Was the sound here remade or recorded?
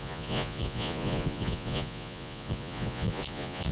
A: remade